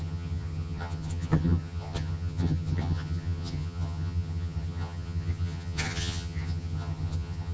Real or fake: fake